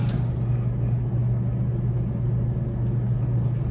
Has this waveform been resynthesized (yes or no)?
no